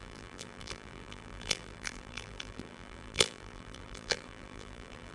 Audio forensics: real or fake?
fake